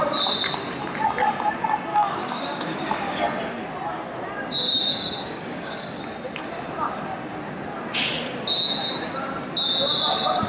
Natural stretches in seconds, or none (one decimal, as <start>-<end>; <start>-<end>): 0.0-1.9; 3.2-4.9; 6.0-10.5